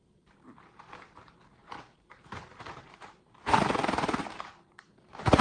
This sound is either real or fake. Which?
fake